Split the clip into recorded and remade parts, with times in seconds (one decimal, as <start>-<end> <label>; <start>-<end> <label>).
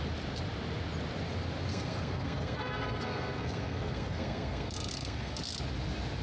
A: 0.0-1.7 recorded; 1.7-5.4 remade; 5.4-6.2 recorded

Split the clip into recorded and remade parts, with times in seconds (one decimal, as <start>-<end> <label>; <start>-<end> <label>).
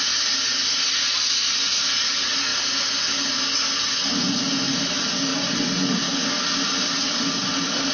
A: 0.0-7.9 recorded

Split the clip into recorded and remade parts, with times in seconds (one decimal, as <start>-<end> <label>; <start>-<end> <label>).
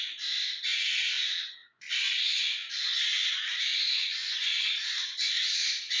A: 0.0-1.7 recorded; 1.7-2.4 remade; 2.4-4.0 recorded; 4.0-4.6 remade; 4.6-6.0 recorded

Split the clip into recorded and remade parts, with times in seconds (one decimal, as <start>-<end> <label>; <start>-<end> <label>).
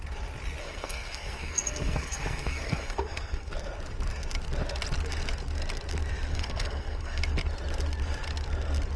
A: 0.0-0.6 recorded; 0.6-3.5 remade; 3.5-6.3 recorded; 6.3-7.2 remade; 7.2-9.0 recorded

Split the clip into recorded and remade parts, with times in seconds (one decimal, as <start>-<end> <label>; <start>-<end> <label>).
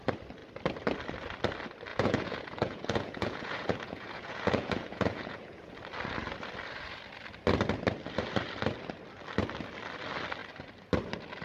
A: 0.0-1.9 recorded; 1.9-5.7 remade; 5.7-11.4 recorded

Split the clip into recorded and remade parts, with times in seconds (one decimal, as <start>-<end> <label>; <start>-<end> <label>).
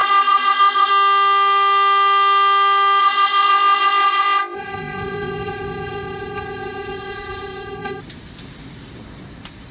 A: 0.0-0.9 remade; 0.9-3.0 recorded; 3.0-8.0 remade; 8.0-9.7 recorded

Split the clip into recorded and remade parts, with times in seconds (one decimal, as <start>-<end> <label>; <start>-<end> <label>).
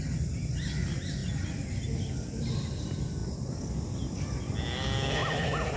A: 0.0-5.2 recorded; 5.2-5.8 remade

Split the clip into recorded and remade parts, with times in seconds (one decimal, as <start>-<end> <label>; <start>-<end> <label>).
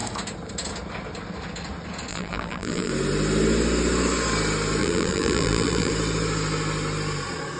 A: 0.0-2.1 recorded; 2.1-2.9 remade; 2.9-4.8 recorded; 4.8-5.9 remade; 5.9-7.6 recorded